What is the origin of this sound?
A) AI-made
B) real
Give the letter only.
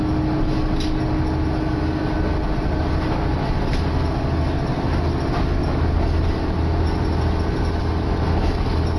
B